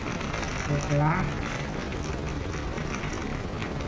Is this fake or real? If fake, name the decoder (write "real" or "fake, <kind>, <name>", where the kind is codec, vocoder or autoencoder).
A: real